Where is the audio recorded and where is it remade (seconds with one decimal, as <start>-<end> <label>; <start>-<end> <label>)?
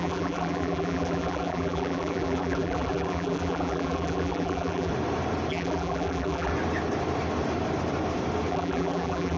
0.0-4.9 remade; 4.9-5.5 recorded; 5.5-6.5 remade; 6.5-8.5 recorded; 8.5-9.4 remade